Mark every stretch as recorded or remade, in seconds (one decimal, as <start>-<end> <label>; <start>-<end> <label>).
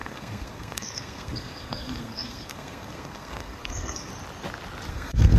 0.0-4.1 remade; 4.1-4.9 recorded; 4.9-5.4 remade